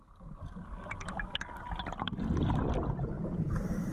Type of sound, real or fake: real